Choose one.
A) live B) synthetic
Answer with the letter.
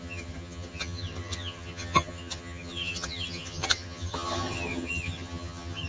B